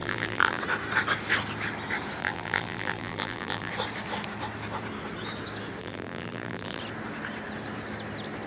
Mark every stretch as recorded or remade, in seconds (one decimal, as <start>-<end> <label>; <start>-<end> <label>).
0.0-0.6 remade; 0.6-2.2 recorded; 2.2-3.7 remade; 3.7-5.8 recorded; 5.8-6.8 remade; 6.8-8.5 recorded